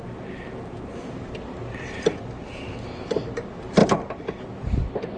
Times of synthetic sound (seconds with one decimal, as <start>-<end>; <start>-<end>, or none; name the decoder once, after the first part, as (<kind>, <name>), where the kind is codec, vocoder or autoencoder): none